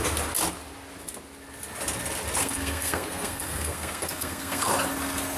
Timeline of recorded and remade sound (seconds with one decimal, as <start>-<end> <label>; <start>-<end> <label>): 0.0-2.4 recorded; 2.4-4.7 remade; 4.7-5.4 recorded